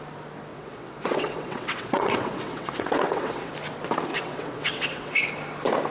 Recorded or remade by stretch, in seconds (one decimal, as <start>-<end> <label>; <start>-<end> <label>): 0.0-0.5 recorded; 0.5-3.5 remade; 3.5-4.1 recorded; 4.1-5.3 remade; 5.3-5.9 recorded

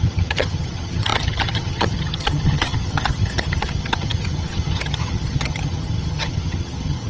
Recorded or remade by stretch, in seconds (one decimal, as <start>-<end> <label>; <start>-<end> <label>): 0.0-7.1 remade